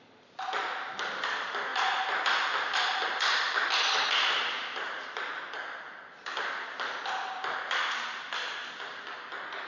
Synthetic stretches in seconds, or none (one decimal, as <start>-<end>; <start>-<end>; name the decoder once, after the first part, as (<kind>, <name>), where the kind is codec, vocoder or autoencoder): none